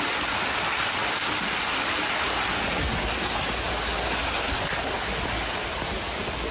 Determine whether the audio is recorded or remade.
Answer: recorded